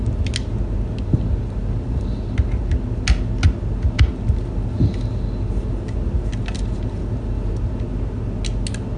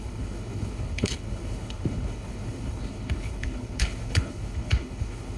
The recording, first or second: first